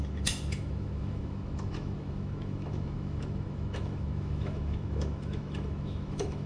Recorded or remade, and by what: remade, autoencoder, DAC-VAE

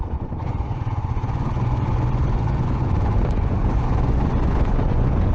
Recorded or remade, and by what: remade, vocoder, Vocos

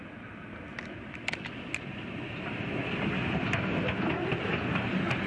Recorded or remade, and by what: recorded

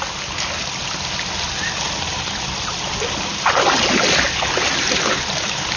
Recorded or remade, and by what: recorded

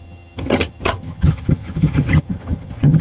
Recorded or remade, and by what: remade, vocoder, HiFi-GAN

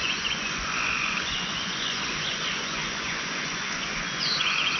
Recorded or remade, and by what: remade, vocoder, Vocos